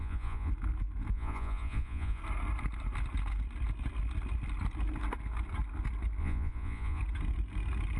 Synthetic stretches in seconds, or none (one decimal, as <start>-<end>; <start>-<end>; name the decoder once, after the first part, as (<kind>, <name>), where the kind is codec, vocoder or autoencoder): 0.0-0.5 (vocoder, Vocos); 1.1-2.2; 6.2-7.0